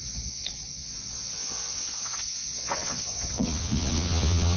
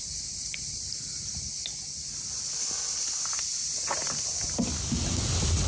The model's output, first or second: first